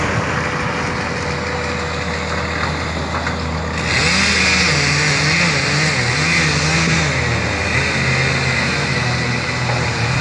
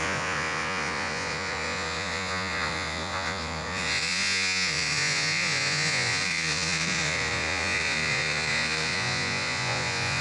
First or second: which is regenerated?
second